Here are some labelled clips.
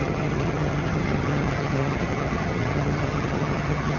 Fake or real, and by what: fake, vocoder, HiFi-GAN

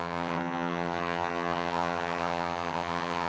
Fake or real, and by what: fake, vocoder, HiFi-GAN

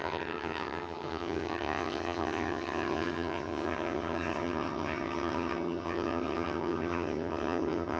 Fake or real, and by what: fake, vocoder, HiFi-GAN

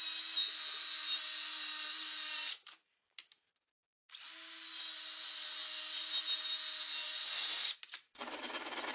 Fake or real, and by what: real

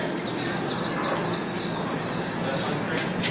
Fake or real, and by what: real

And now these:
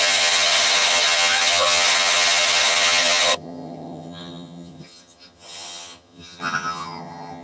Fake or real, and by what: fake, vocoder, HiFi-GAN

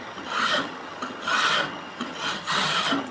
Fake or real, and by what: fake, vocoder, HiFi-GAN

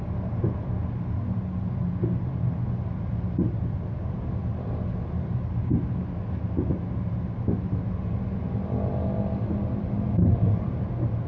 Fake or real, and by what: real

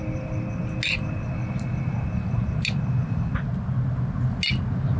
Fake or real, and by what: real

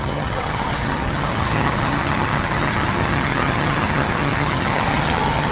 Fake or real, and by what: fake, vocoder, HiFi-GAN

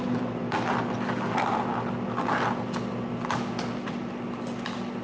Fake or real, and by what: real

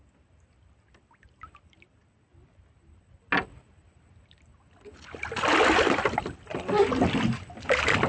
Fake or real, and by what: real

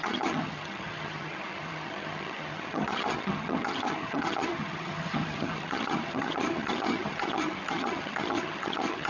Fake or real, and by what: fake, vocoder, HiFi-GAN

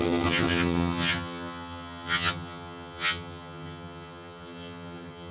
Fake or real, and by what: fake, vocoder, HiFi-GAN